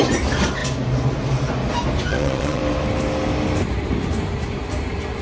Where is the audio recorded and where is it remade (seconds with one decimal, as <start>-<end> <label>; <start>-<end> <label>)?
0.0-2.1 recorded; 2.1-2.6 remade; 2.6-5.2 recorded